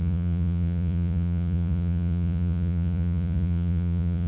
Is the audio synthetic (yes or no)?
yes